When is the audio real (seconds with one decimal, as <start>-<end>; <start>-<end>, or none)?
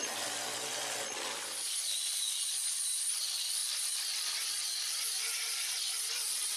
0.0-3.6